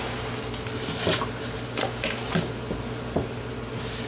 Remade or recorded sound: recorded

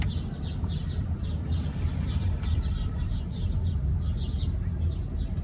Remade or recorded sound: recorded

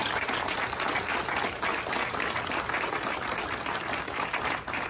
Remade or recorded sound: recorded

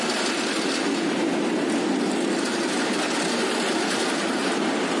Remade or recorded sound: recorded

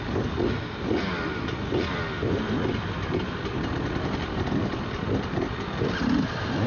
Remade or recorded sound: remade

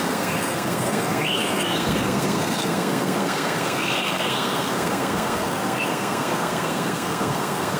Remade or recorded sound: remade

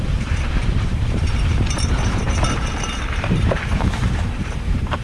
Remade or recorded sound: remade